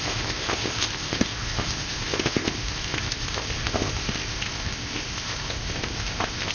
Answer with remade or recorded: remade